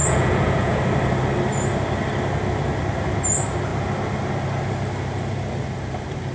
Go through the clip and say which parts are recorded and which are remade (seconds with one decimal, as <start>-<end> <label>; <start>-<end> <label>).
0.0-0.8 remade; 0.8-6.3 recorded